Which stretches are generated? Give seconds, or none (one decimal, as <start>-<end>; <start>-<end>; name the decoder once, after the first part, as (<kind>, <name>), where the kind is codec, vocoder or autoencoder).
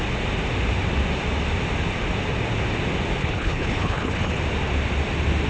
3.2-4.4 (codec, HILCodec)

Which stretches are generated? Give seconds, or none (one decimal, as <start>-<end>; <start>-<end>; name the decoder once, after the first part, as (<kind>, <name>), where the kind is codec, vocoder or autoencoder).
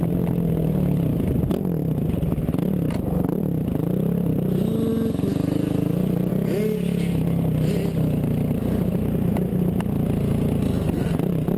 none